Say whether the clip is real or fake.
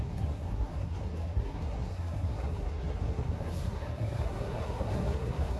fake